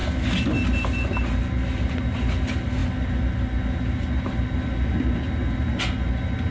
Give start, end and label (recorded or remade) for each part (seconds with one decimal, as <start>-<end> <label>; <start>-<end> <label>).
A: 0.0-6.5 recorded